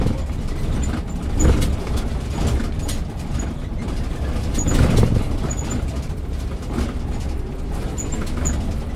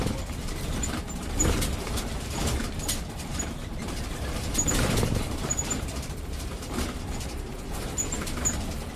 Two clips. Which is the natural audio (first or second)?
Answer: first